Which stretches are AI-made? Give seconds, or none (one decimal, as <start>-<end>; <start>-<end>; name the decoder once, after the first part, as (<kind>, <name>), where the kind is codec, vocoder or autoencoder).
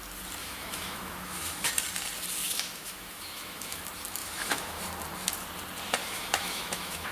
0.4-1.7 (autoencoder, DAC-VAE); 2.4-3.8; 4.2-4.8; 6.0-7.1